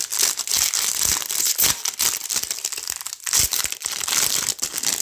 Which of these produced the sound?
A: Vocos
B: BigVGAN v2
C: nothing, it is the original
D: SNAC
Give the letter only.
C